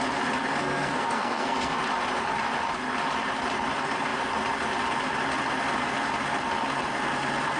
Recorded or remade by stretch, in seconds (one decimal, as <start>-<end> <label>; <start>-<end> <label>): 0.0-0.6 recorded; 0.6-1.8 remade; 1.8-7.6 recorded